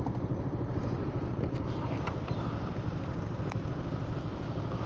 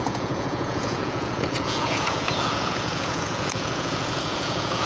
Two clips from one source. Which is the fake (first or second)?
second